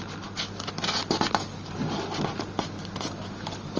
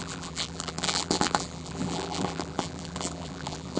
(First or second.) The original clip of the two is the first